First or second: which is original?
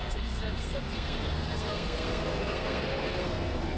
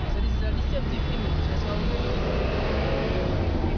second